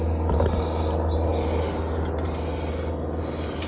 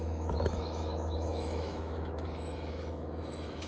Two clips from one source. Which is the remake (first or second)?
second